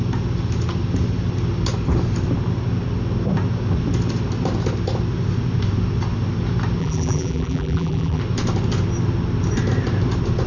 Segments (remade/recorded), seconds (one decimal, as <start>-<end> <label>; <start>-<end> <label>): 0.0-6.8 recorded; 6.8-8.2 remade; 8.2-10.5 recorded